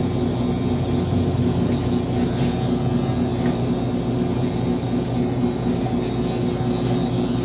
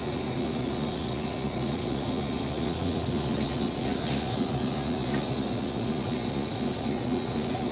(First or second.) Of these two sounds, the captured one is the first